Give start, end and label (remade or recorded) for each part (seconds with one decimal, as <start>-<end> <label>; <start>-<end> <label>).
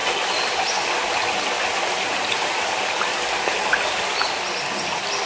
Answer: 0.0-5.2 recorded